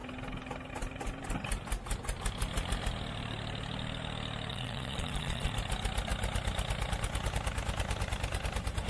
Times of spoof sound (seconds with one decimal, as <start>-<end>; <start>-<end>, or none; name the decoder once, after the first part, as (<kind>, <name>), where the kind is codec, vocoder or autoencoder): 4.5-5.5 (vocoder, Vocos)